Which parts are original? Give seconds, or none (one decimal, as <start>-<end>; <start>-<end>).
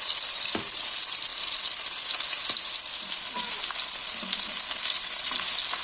0.0-1.3; 2.0-5.8